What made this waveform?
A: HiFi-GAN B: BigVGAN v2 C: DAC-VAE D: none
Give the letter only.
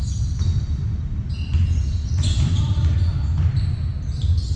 D